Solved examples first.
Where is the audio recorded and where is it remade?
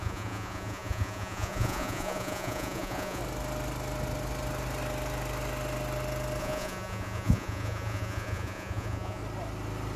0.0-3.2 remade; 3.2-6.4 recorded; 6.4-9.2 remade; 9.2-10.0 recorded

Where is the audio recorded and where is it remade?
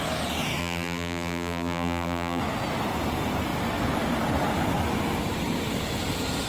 0.0-0.6 recorded; 0.6-2.4 remade; 2.4-6.5 recorded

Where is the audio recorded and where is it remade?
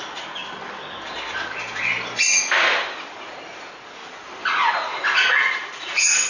0.0-0.4 remade; 0.4-3.1 recorded; 3.1-4.0 remade; 4.0-4.7 recorded; 4.7-6.3 remade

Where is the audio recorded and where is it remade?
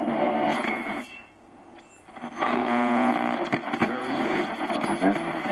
0.0-0.5 recorded; 0.5-1.4 remade; 1.4-2.6 recorded; 2.6-3.1 remade; 3.1-3.8 recorded; 3.8-4.7 remade; 4.7-5.5 recorded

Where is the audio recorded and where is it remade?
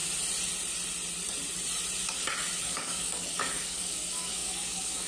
0.0-2.6 recorded; 2.6-5.1 remade